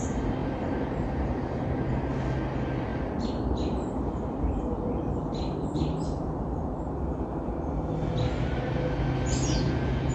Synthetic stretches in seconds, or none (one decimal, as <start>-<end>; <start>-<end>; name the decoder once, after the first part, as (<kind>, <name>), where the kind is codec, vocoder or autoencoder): 0.4-1.9 (vocoder, BigVGAN v2); 2.9-7.5